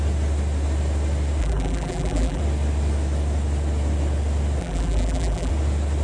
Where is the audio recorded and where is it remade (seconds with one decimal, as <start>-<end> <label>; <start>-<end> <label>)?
0.0-1.4 recorded; 1.4-2.4 remade; 2.4-4.6 recorded; 4.6-5.5 remade; 5.5-6.0 recorded